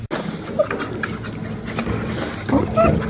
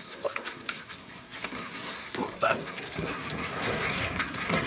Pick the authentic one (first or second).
first